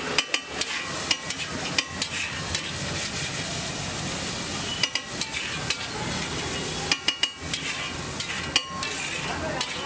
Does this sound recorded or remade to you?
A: recorded